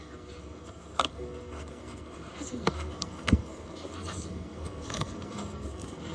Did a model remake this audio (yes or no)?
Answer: yes